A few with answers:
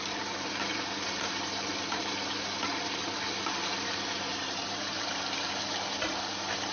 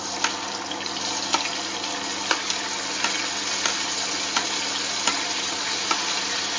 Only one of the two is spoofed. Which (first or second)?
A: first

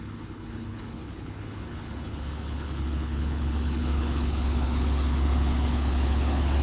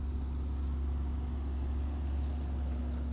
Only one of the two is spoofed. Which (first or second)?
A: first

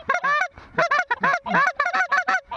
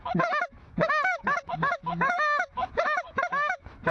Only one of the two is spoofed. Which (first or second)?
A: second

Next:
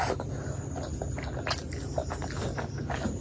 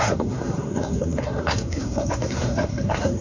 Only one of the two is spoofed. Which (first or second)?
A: second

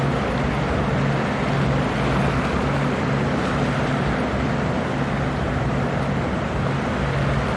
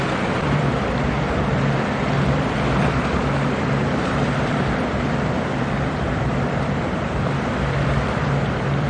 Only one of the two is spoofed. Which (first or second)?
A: second